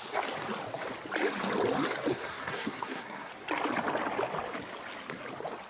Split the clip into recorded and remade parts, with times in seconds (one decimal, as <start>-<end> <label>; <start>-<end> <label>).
0.0-2.1 recorded; 2.1-3.3 remade; 3.3-5.7 recorded